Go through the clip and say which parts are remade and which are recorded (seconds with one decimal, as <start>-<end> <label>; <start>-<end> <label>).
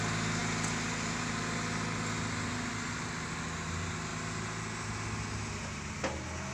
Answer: 0.0-6.5 recorded